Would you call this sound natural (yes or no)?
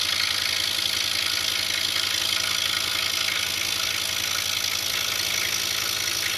yes